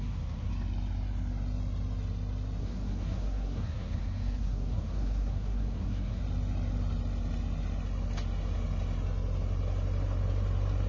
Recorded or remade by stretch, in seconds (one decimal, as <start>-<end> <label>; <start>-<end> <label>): 0.0-0.5 remade; 0.5-2.6 recorded; 2.6-6.2 remade; 6.2-10.9 recorded